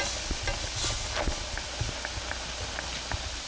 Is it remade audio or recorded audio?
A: recorded